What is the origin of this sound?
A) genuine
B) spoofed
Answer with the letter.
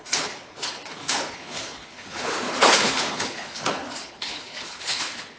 B